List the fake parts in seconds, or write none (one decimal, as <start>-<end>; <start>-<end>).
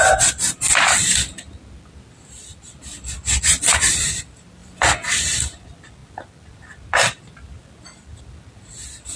none